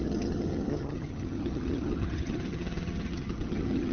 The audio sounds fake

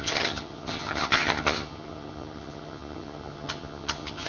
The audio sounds fake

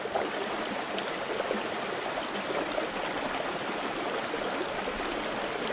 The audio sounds real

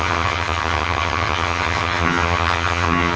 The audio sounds fake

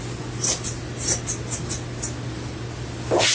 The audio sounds real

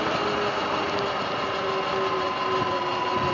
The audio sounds real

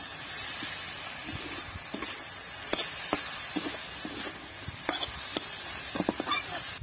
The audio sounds real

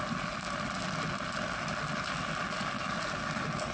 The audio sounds real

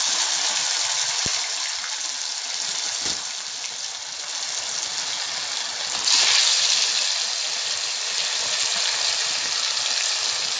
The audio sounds real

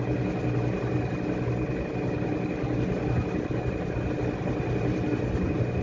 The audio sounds real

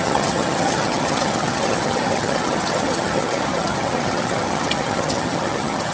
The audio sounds fake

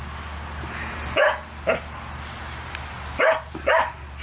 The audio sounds real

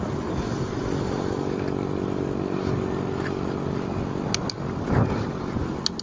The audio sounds real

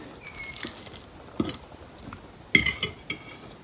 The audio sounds real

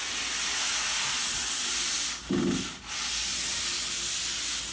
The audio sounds real